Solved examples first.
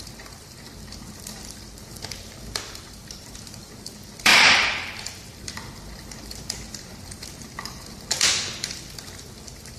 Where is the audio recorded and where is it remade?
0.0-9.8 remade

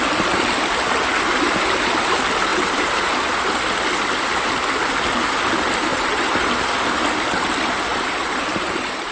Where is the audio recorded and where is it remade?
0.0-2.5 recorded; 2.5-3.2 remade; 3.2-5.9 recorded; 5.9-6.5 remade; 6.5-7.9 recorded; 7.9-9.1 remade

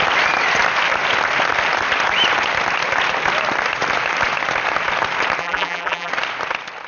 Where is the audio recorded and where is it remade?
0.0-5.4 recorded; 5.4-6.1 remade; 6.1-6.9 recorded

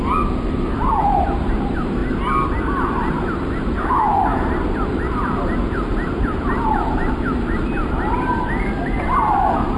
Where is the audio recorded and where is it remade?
0.0-2.0 remade; 2.0-3.8 recorded; 3.8-4.3 remade; 4.3-5.1 recorded; 5.1-9.8 remade

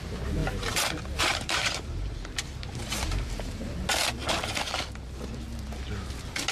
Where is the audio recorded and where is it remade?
0.0-0.4 recorded; 0.4-2.3 remade; 2.3-6.5 recorded